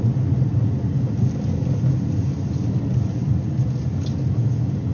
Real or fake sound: real